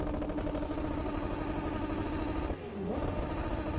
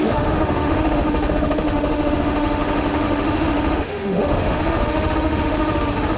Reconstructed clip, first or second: second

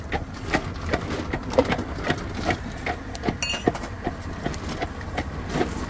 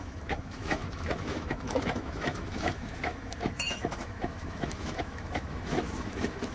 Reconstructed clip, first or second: second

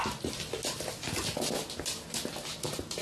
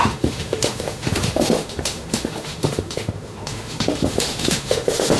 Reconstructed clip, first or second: second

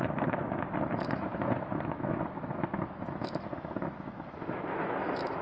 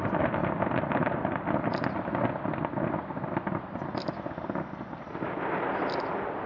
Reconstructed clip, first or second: first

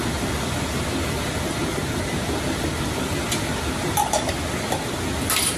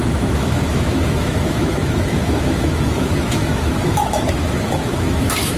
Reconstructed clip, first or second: second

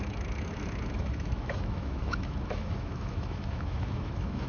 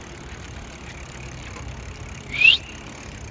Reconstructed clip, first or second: first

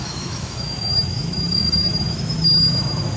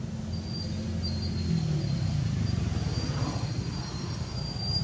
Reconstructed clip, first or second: first